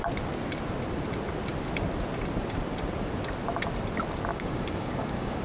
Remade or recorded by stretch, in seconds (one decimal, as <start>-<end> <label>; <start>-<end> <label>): 0.0-4.3 recorded; 4.3-5.4 remade